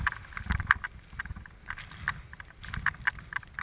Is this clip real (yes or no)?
yes